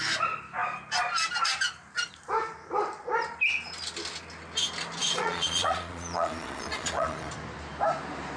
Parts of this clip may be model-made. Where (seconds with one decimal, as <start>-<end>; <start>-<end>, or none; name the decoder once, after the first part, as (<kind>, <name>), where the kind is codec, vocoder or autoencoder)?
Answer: 5.0-7.3 (vocoder, Vocos)